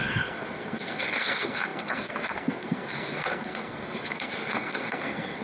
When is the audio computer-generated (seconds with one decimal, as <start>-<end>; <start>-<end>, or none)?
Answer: 0.0-5.4